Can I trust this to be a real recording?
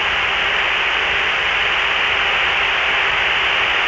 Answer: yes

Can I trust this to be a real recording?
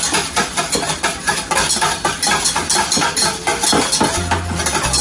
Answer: yes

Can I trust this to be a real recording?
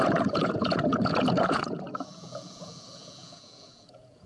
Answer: no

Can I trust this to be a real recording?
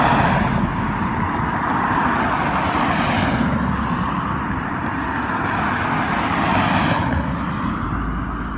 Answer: yes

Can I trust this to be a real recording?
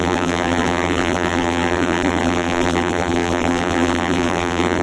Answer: no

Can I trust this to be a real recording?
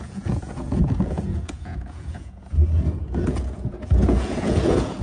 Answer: no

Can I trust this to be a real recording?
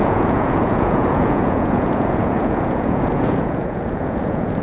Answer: no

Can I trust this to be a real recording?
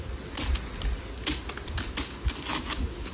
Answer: yes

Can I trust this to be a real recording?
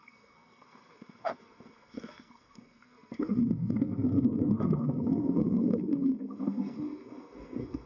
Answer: no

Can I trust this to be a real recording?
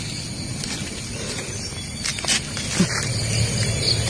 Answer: yes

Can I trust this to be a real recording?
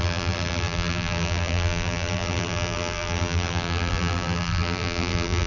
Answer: no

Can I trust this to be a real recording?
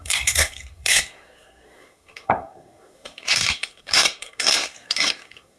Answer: no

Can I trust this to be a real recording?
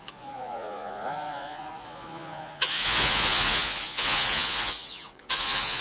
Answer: no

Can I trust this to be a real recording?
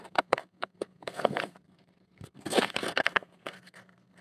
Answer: no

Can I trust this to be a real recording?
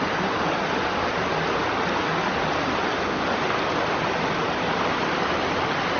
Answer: yes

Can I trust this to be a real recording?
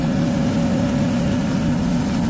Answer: yes